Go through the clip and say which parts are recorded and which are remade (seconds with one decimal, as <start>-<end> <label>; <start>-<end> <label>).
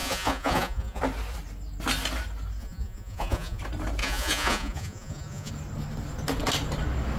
0.0-1.0 remade; 1.0-2.6 recorded; 2.6-3.6 remade; 3.6-4.0 recorded; 4.0-5.5 remade; 5.5-7.2 recorded